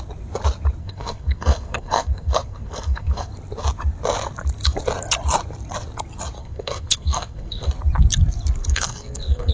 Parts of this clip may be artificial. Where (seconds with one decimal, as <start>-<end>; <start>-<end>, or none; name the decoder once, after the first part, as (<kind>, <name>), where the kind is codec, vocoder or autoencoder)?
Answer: 0.8-3.3 (codec, SNAC); 6.4-7.7; 8.6-9.5